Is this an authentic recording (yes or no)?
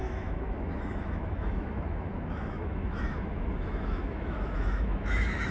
no